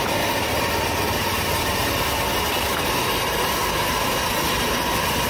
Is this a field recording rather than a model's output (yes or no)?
yes